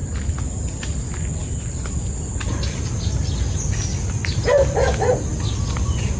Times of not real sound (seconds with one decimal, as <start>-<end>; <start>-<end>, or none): none